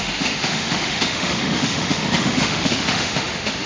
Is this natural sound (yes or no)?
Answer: no